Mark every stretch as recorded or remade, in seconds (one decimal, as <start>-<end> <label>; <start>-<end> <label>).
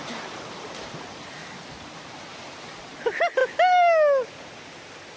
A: 0.0-1.4 remade; 1.4-2.0 recorded; 2.0-3.4 remade; 3.4-5.2 recorded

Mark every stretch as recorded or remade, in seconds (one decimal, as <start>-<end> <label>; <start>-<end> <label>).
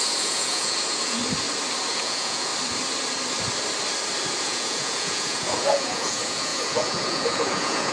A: 0.0-1.2 remade; 1.2-1.9 recorded; 1.9-2.5 remade; 2.5-4.4 recorded; 4.4-7.9 remade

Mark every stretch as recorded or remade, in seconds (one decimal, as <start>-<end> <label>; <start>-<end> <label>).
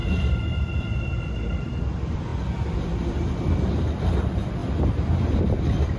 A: 0.0-1.3 recorded; 1.3-6.0 remade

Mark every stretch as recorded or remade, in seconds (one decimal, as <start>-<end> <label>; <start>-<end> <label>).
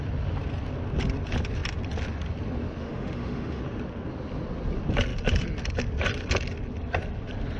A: 0.0-2.8 recorded; 2.8-3.6 remade; 3.6-7.6 recorded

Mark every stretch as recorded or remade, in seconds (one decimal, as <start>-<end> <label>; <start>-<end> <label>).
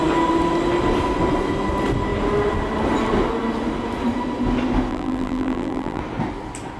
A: 0.0-4.9 recorded; 4.9-6.0 remade; 6.0-6.8 recorded